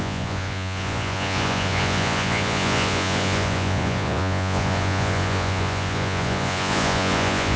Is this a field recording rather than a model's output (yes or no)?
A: no